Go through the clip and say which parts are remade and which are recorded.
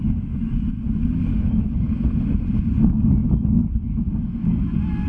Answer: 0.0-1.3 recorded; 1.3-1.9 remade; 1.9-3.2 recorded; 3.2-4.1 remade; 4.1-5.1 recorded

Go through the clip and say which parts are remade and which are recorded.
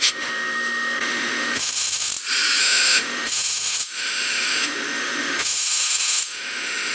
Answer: 0.0-2.1 remade; 2.1-2.6 recorded; 2.6-6.9 remade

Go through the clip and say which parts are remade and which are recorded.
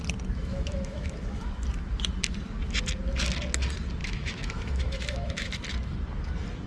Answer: 0.0-0.5 recorded; 0.5-1.5 remade; 1.5-4.0 recorded; 4.0-5.5 remade; 5.5-6.7 recorded